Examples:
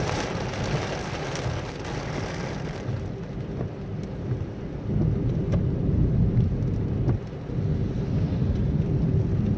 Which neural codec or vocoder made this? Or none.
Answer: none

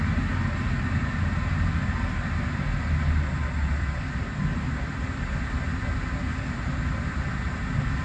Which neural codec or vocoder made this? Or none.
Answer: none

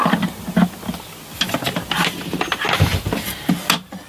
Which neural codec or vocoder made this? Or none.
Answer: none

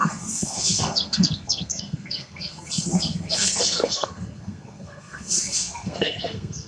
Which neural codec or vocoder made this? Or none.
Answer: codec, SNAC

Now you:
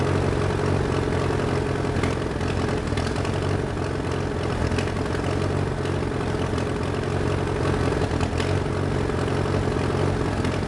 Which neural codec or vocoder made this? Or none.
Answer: none